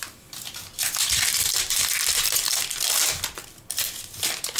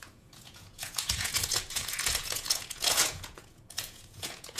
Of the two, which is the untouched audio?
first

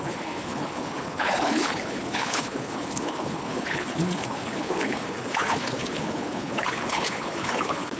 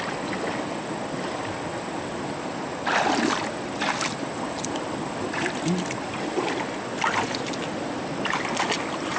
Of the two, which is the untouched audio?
second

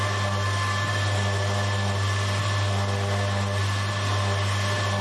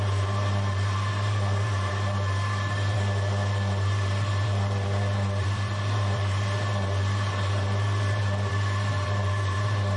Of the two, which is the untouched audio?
first